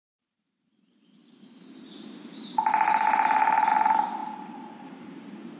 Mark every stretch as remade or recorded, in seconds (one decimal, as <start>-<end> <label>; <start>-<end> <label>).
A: 0.0-1.2 remade; 1.2-3.7 recorded; 3.7-4.2 remade; 4.2-4.8 recorded; 4.8-5.6 remade